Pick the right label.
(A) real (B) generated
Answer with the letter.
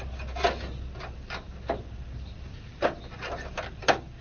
A